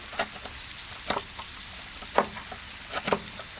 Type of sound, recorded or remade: recorded